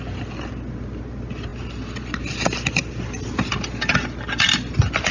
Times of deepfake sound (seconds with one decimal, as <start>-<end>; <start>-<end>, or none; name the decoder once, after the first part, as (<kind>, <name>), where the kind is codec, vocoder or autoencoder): none